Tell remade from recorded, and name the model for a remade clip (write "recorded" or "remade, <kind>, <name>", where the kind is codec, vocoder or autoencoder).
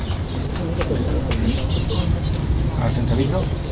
recorded